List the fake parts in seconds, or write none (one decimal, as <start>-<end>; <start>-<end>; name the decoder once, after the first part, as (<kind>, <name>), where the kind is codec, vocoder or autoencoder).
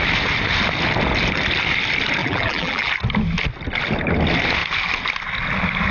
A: 2.2-2.9 (vocoder, BigVGAN v2)